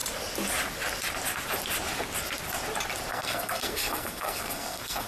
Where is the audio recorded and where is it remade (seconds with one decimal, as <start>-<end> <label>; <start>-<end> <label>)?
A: 0.0-3.1 recorded; 3.1-5.1 remade